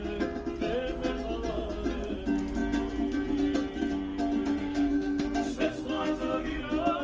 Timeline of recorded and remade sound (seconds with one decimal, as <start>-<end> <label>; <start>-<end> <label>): 0.0-4.6 recorded; 4.6-6.6 remade; 6.6-7.0 recorded